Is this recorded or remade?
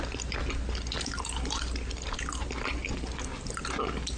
recorded